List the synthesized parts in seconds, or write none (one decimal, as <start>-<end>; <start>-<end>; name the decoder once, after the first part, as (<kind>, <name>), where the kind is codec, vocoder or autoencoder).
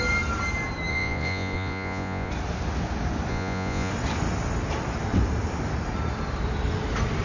0.9-2.3 (vocoder, Vocos); 3.3-3.9